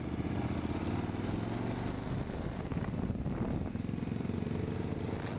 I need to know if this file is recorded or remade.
recorded